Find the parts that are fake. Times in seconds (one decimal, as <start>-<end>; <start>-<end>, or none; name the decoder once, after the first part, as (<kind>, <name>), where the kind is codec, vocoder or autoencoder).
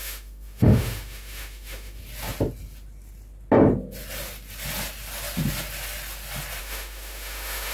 0.0-2.0 (autoencoder, DAC-VAE); 6.6-7.7